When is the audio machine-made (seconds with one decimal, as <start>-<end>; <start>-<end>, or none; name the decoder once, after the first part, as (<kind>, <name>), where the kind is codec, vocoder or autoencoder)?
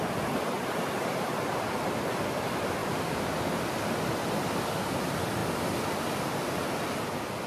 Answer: 2.8-3.4 (vocoder, BigVGAN v2); 5.4-6.6